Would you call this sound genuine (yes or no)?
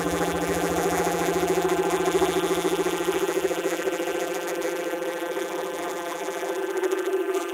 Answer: no